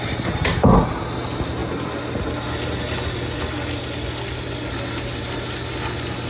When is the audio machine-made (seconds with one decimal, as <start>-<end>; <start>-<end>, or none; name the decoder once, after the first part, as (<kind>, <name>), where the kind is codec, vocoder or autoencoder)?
none